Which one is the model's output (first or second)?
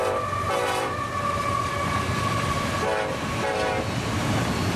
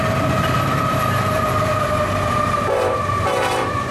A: second